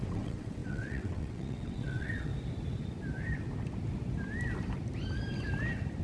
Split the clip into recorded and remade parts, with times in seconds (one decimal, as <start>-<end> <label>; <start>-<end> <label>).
0.0-2.3 remade; 2.3-6.0 recorded